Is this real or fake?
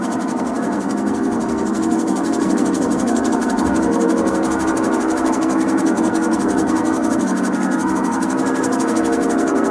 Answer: fake